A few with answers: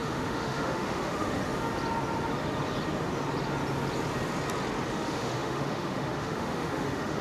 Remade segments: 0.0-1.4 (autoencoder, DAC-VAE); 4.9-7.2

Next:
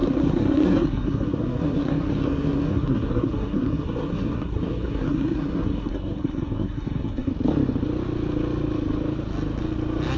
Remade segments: 0.0-7.3 (codec, SNAC)

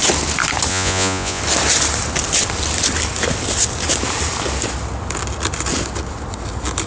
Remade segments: 0.7-1.4 (vocoder, Vocos)